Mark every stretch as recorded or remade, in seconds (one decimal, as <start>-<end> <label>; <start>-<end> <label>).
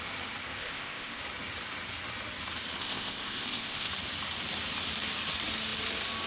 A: 0.0-0.6 recorded; 0.6-1.2 remade; 1.2-2.8 recorded; 2.8-3.9 remade; 3.9-6.3 recorded